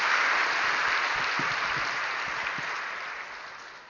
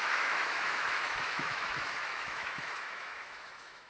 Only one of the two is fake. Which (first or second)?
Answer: second